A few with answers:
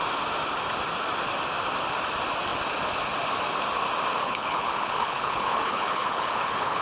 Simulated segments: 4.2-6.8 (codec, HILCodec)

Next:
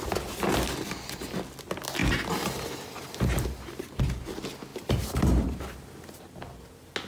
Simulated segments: 2.0-4.0 (vocoder, BigVGAN v2); 4.7-5.8

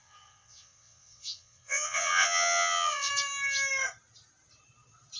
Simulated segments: 0.0-3.1 (vocoder, WaveNeXt)

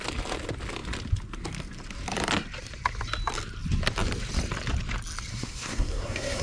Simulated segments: 5.3-6.4 (codec, SNAC)

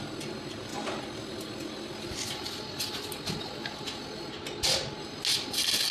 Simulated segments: none